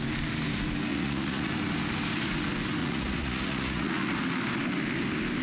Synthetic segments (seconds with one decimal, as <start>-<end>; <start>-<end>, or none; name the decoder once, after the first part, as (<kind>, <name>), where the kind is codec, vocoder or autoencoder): 0.9-1.5 (vocoder, Vocos); 2.8-4.1